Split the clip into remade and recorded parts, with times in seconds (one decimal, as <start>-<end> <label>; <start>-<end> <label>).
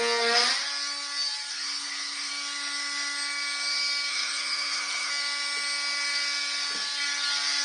0.0-1.5 recorded; 1.5-2.3 remade; 2.3-4.1 recorded; 4.1-5.1 remade; 5.1-7.6 recorded